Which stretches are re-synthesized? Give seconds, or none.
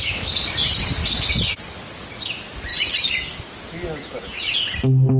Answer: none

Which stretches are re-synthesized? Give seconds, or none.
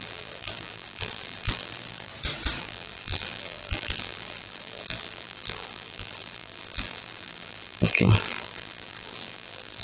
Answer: 0.0-2.1 (vocoder, BigVGAN v2); 2.6-9.8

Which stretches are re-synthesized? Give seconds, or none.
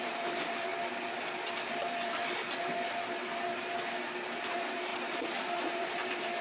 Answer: 0.0-0.7 (vocoder, BigVGAN v2); 4.5-6.4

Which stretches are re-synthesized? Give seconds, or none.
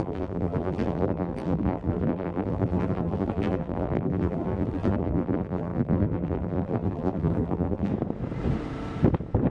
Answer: 0.0-7.9 (vocoder, BigVGAN v2)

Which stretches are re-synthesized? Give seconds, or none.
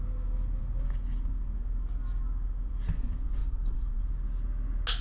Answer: 3.4-4.0 (vocoder, BigVGAN v2)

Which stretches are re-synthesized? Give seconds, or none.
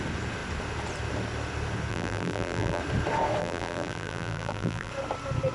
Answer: 1.9-2.8 (vocoder, BigVGAN v2); 3.4-4.9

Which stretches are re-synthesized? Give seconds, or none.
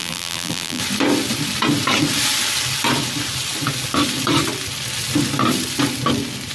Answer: 0.0-0.8 (vocoder, BigVGAN v2)